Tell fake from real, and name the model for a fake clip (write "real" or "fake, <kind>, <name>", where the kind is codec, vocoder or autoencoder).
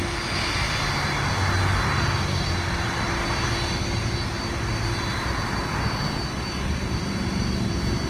real